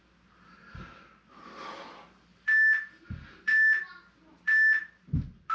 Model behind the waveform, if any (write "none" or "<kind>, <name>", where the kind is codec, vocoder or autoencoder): none